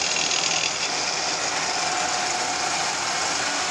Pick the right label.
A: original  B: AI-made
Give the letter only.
A